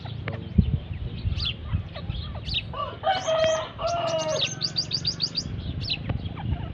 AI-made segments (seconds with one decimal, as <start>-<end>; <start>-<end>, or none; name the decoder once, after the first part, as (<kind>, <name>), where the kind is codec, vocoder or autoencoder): none